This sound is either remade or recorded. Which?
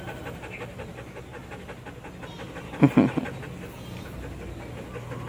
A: recorded